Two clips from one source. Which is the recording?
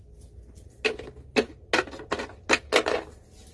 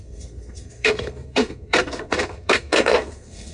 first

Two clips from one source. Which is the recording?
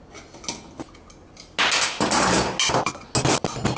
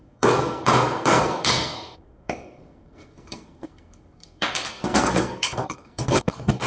first